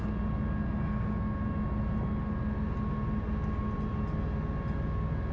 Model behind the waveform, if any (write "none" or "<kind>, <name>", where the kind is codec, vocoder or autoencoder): none